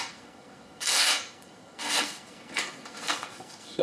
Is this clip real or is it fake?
fake